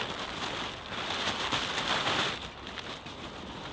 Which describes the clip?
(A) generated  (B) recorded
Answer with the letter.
B